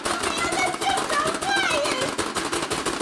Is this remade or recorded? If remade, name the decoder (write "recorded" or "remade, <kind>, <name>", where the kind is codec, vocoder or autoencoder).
recorded